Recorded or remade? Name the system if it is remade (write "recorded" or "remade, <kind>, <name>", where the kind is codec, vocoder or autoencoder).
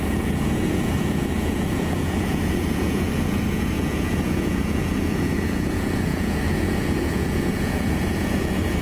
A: remade, vocoder, Vocos